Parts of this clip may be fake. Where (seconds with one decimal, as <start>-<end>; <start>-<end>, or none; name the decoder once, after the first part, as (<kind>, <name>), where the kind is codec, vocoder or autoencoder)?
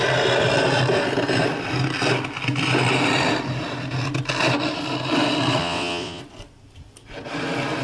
5.6-6.2 (vocoder, WaveNeXt)